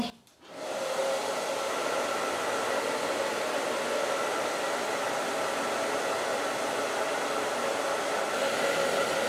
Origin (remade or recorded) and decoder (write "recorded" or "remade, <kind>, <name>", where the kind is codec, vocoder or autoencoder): recorded